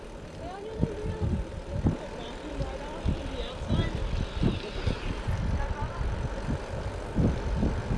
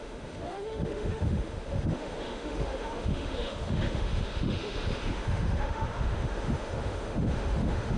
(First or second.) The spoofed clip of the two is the second